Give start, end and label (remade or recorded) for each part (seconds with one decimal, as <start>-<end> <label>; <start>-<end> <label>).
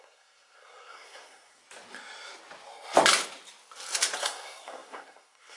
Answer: 0.0-1.6 remade; 1.6-4.2 recorded; 4.2-5.6 remade